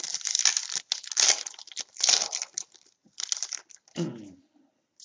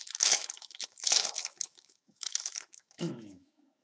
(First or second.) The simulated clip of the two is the second